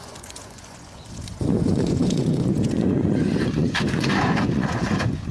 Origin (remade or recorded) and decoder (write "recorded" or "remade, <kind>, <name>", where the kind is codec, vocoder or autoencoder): remade, vocoder, Vocos